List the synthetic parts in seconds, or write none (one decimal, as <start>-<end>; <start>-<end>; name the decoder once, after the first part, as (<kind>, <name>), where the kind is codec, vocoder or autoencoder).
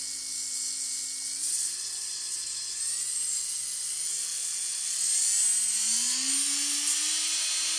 1.4-2.8 (vocoder, WaveNeXt)